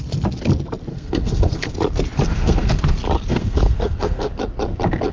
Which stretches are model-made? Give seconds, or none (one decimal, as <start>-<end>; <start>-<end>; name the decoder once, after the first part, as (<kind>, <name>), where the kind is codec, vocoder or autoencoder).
0.9-1.7 (codec, SNAC); 2.3-2.8; 3.3-4.3